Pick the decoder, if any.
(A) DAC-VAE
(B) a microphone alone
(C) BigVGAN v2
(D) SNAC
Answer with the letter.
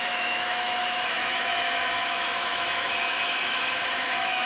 A